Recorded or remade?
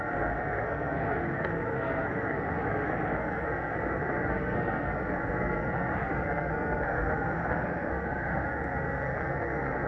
remade